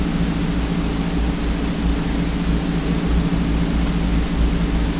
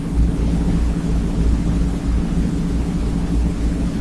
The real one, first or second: first